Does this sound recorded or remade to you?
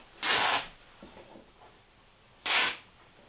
recorded